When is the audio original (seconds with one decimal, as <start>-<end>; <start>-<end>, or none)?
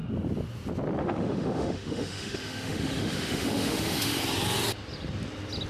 0.0-1.0; 4.2-5.7